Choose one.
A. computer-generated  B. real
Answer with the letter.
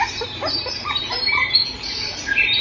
A